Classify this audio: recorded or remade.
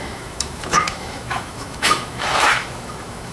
remade